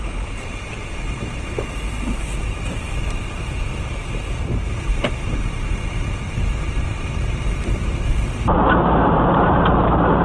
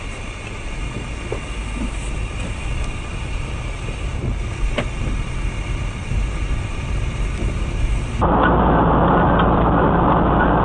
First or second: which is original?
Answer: second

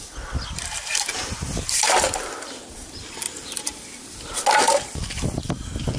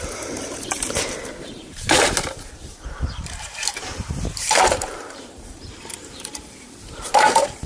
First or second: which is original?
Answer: first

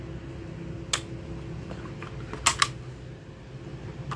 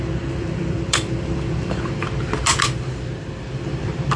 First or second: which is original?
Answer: first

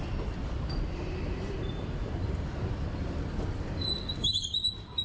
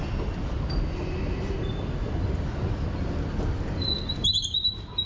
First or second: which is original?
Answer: second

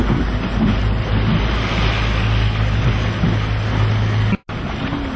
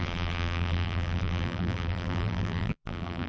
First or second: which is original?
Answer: first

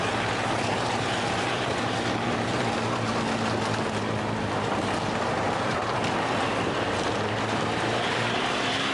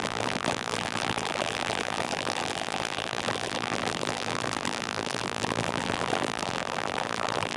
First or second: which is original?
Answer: first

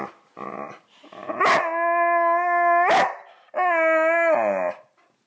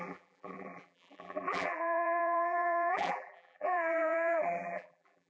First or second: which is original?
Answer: first